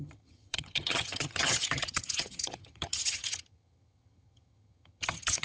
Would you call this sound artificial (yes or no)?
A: yes